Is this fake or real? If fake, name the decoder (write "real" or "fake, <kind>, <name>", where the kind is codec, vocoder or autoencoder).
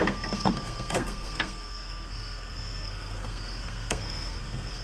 fake, codec, SNAC